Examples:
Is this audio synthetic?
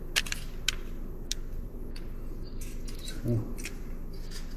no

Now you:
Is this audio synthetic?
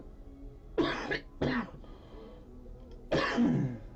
no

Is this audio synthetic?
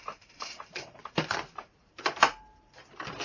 yes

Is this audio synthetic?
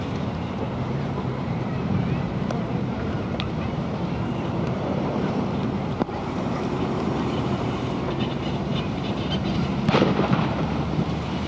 yes